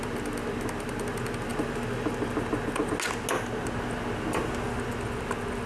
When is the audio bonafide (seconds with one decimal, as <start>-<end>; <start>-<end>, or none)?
0.0-5.7